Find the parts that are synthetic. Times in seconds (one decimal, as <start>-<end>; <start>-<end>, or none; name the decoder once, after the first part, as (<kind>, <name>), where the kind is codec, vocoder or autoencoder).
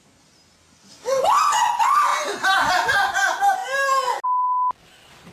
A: none